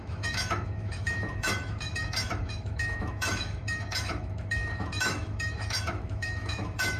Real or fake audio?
fake